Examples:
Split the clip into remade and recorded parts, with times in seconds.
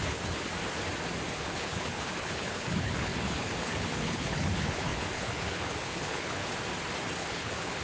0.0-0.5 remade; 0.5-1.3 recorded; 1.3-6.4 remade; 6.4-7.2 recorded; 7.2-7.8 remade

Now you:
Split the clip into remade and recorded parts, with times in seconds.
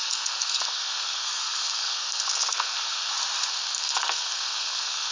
0.0-3.1 remade; 3.1-3.5 recorded; 3.5-5.1 remade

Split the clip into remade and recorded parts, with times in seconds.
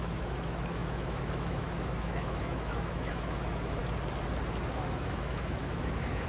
0.0-3.8 remade; 3.8-4.7 recorded; 4.7-6.3 remade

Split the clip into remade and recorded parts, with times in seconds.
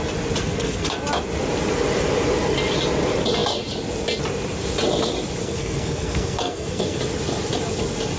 0.0-0.4 recorded; 0.4-1.0 remade; 1.0-5.4 recorded; 5.4-7.0 remade; 7.0-8.2 recorded